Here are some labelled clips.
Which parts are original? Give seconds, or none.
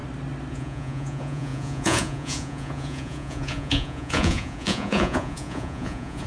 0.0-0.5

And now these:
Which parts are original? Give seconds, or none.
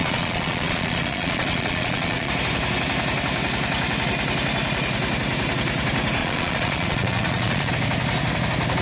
2.3-6.2; 7.7-8.8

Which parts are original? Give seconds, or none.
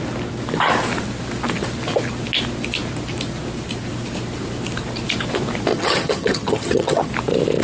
0.0-5.7; 7.1-7.6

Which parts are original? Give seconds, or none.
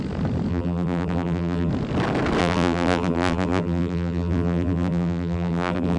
0.0-0.5; 1.7-2.4